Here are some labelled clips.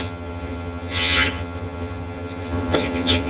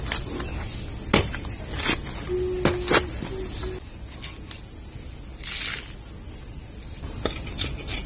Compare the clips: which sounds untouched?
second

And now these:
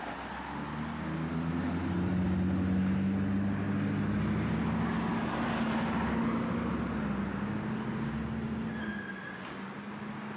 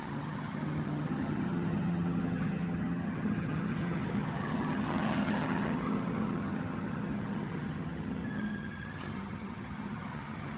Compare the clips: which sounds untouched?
first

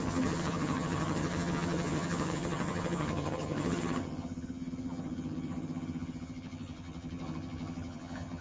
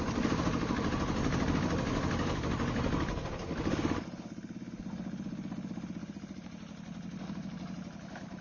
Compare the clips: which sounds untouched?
second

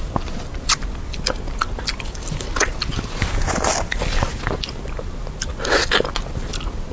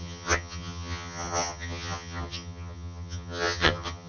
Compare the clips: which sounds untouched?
first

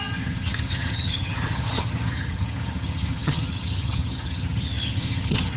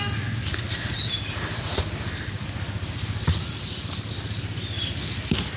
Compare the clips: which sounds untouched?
second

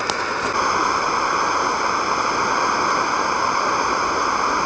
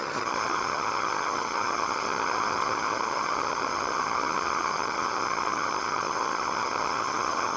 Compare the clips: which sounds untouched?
first